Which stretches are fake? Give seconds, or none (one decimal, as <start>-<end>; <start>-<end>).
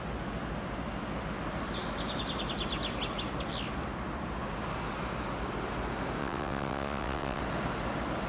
6.2-7.4